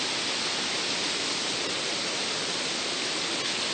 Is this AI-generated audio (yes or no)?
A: no